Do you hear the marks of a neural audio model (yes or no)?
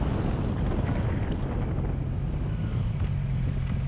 no